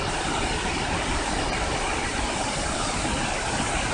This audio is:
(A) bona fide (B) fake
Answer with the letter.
A